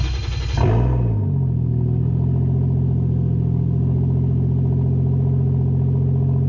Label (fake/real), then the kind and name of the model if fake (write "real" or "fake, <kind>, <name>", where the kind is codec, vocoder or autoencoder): real